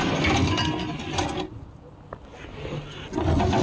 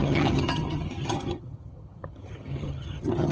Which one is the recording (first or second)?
first